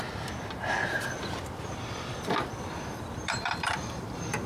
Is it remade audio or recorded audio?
remade